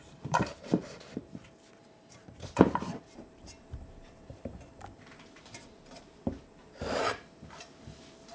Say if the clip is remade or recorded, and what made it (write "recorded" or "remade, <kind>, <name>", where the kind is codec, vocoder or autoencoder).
remade, vocoder, BigVGAN v2